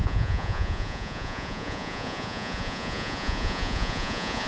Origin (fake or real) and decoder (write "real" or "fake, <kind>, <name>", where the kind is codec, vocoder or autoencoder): fake, vocoder, Vocos